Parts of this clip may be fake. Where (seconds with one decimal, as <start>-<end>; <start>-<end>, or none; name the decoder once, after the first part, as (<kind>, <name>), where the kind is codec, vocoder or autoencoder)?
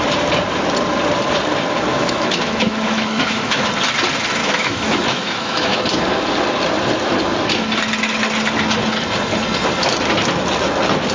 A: 1.9-3.7 (autoencoder, DAC-VAE); 4.4-5.8